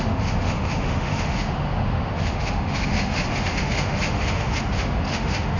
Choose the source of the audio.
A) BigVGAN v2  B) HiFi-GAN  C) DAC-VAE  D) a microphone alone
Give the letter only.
C